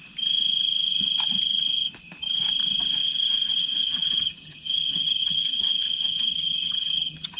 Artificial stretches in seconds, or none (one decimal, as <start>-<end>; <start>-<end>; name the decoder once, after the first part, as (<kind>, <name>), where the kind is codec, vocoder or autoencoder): 3.0-7.4 (vocoder, HiFi-GAN)